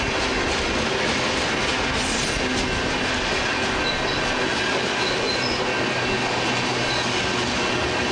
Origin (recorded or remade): recorded